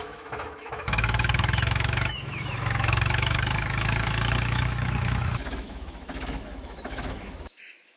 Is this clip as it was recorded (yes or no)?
no